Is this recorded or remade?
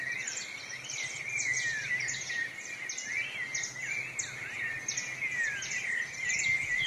recorded